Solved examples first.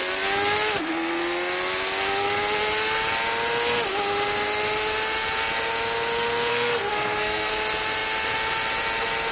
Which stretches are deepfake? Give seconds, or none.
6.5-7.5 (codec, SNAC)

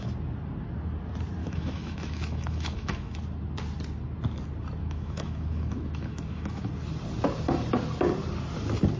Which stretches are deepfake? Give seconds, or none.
1.4-3.2 (autoencoder, DAC-VAE); 4.8-6.7

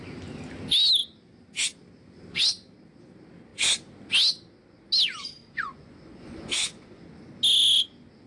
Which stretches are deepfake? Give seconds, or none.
5.4-7.0 (vocoder, Vocos)

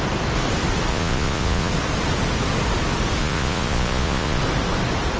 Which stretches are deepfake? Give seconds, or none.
0.9-1.7 (vocoder, Vocos); 3.2-4.4

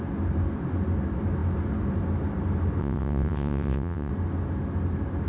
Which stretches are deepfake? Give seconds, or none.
2.8-4.1 (vocoder, WaveNeXt)

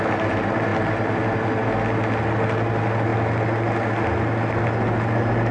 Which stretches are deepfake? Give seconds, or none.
none